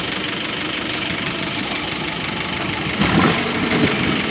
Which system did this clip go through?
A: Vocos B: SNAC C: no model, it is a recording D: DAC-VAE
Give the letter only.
C